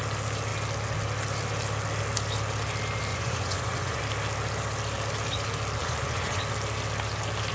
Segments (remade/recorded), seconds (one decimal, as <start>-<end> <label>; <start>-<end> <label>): 0.0-3.1 recorded; 3.1-4.0 remade; 4.0-5.8 recorded; 5.8-6.4 remade; 6.4-7.5 recorded